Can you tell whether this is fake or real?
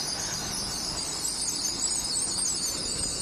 real